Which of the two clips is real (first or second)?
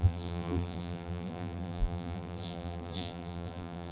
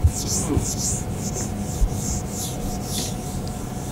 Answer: second